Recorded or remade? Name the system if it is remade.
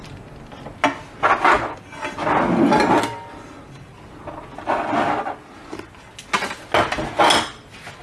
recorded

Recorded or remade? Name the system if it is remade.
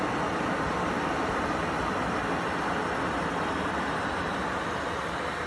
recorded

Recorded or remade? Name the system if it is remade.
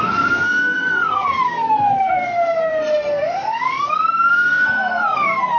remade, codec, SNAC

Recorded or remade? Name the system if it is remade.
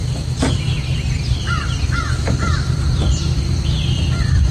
recorded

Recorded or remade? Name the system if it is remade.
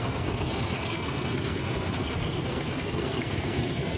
remade, codec, SNAC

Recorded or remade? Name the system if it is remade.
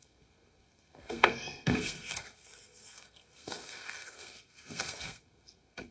remade, codec, SNAC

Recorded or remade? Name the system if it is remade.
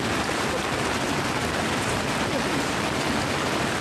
recorded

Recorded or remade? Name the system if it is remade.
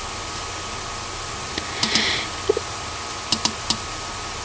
recorded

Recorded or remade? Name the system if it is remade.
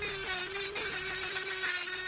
recorded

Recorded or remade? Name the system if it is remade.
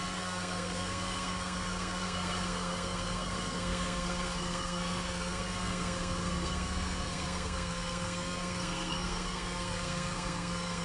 remade, codec, SNAC